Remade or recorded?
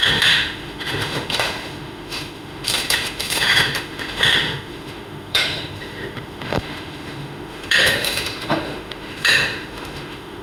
remade